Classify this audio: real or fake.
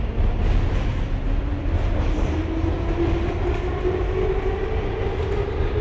real